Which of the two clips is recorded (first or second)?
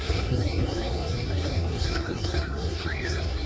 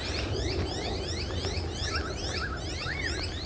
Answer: second